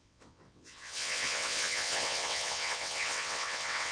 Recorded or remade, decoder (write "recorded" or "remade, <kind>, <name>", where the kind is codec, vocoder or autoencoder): remade, vocoder, WaveNeXt